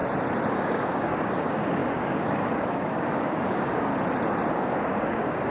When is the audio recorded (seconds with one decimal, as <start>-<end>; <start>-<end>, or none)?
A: 0.0-0.5; 3.9-4.5